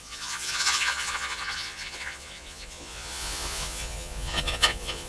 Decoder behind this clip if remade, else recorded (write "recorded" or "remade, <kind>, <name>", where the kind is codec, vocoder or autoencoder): remade, vocoder, Vocos